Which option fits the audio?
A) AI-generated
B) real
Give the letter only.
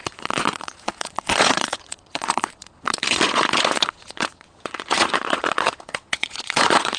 A